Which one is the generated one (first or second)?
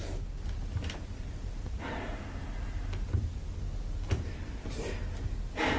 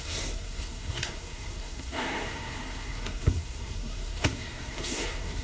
second